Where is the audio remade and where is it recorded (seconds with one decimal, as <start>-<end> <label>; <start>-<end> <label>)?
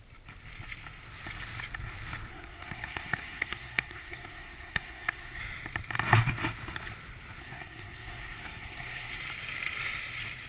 0.0-2.3 recorded; 2.3-5.4 remade; 5.4-7.4 recorded; 7.4-9.2 remade; 9.2-10.5 recorded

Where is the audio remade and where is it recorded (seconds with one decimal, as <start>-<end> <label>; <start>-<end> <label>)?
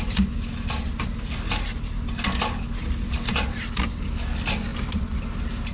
0.0-5.7 recorded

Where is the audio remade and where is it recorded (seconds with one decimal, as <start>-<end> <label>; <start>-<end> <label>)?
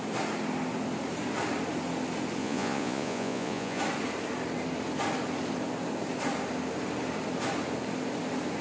0.0-2.4 recorded; 2.4-3.8 remade; 3.8-8.6 recorded